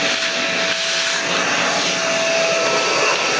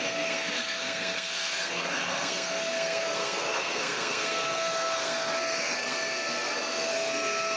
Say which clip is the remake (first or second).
second